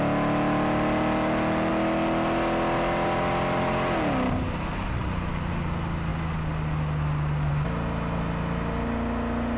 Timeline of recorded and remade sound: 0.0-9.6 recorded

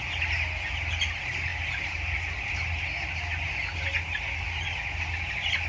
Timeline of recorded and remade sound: 0.0-5.7 recorded